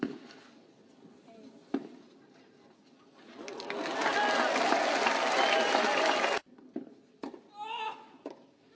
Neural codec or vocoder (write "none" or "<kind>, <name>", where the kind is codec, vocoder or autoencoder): none